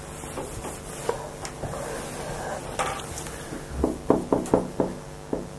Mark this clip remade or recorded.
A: recorded